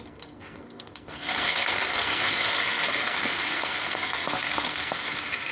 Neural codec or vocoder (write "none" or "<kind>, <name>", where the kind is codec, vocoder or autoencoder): codec, SNAC